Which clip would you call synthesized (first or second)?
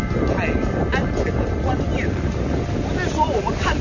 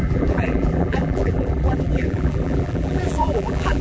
second